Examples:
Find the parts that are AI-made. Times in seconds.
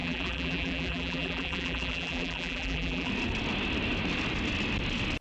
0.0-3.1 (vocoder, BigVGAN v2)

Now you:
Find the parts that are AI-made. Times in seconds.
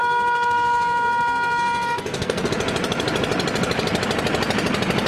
0.0-2.5 (codec, SNAC)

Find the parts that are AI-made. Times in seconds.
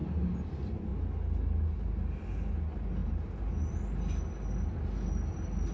0.0-0.5 (vocoder, BigVGAN v2); 3.0-3.6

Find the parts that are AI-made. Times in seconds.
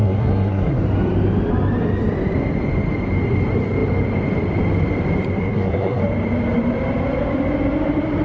0.0-0.8 (codec, SNAC); 5.4-6.0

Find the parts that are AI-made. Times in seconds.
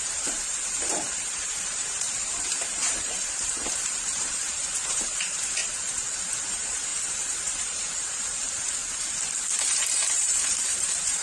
0.0-8.8 (vocoder, BigVGAN v2); 9.5-11.2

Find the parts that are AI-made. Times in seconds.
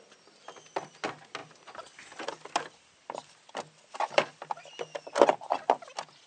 1.4-5.2 (vocoder, BigVGAN v2)